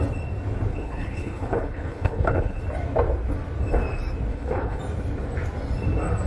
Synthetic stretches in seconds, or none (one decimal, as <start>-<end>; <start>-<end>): 0.7-2.6; 4.3-4.8